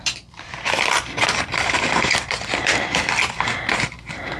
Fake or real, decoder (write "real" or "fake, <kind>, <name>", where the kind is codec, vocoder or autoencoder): fake, vocoder, BigVGAN v2